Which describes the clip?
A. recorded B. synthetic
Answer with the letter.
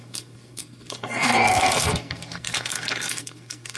B